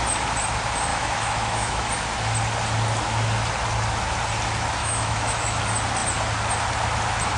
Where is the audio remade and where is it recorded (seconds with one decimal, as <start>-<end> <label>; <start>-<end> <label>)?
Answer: 0.0-0.9 recorded; 0.9-1.9 remade; 1.9-4.8 recorded; 4.8-5.6 remade; 5.6-7.4 recorded